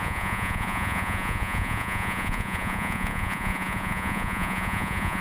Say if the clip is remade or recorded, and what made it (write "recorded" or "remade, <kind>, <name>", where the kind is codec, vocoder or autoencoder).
remade, vocoder, Vocos